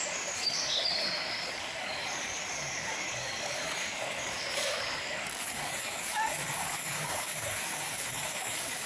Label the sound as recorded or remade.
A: remade